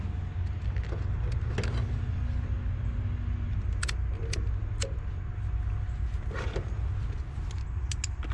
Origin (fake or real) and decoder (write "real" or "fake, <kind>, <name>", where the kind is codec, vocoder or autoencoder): real